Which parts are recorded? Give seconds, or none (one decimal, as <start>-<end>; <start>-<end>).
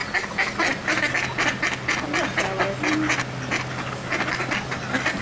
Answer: 0.0-5.2